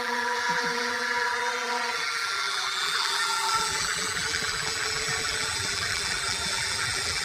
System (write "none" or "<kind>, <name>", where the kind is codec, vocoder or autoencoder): vocoder, BigVGAN v2